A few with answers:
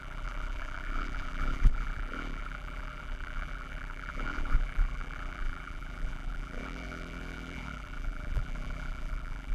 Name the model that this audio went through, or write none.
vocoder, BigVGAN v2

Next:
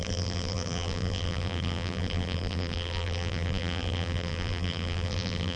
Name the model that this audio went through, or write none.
vocoder, BigVGAN v2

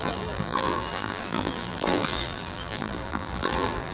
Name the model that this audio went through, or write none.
vocoder, BigVGAN v2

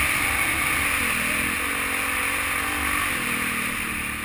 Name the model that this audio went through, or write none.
none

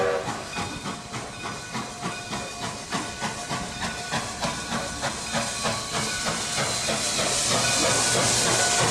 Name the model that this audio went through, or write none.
none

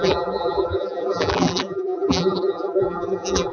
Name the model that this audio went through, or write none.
vocoder, BigVGAN v2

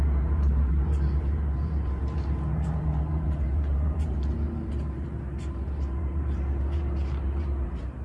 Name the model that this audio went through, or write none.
vocoder, BigVGAN v2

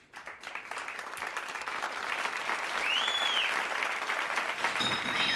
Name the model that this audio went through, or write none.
vocoder, BigVGAN v2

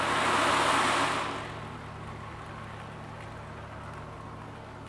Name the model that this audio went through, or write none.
none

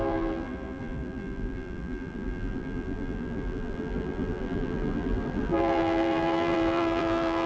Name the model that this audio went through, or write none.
vocoder, BigVGAN v2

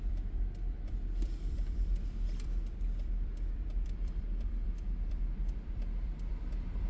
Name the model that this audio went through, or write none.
vocoder, BigVGAN v2